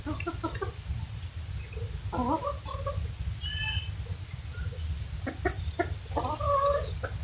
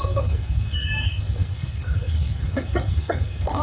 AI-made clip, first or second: second